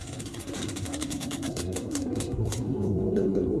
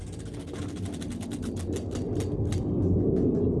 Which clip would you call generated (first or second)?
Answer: first